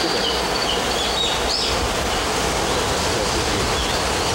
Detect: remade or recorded recorded